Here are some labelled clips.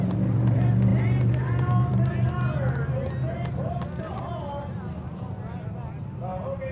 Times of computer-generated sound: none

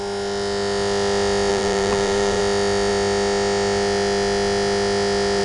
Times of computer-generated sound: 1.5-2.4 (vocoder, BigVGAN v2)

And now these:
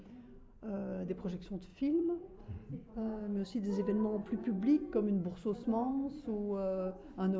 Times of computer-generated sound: 1.7-3.2 (vocoder, Vocos)

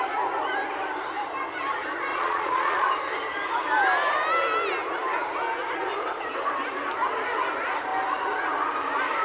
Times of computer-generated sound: 2.1-2.9 (vocoder, Vocos)

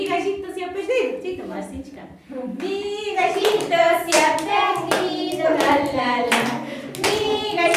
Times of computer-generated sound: 3.4-4.3 (vocoder, BigVGAN v2)

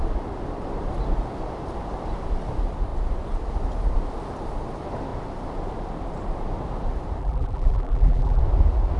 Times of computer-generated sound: 7.2-8.4 (vocoder, BigVGAN v2)

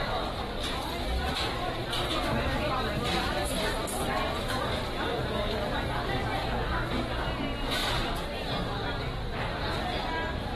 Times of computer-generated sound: none

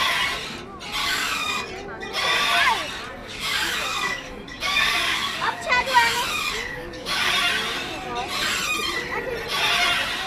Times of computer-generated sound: 1.0-1.7 (codec, DAC); 3.2-7.3